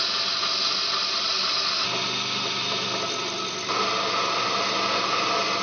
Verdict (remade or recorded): recorded